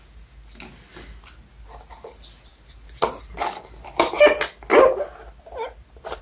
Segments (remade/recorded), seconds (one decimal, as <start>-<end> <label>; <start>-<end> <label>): 0.0-6.2 recorded

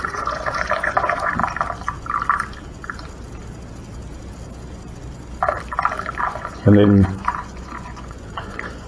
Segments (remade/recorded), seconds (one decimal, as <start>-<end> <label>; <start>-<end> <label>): 0.0-1.4 remade; 1.4-6.2 recorded; 6.2-8.9 remade

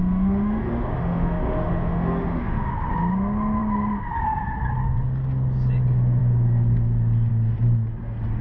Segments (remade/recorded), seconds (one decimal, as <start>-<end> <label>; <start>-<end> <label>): 0.0-2.7 remade; 2.7-8.4 recorded